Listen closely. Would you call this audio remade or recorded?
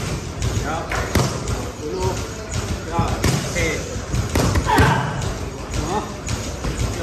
recorded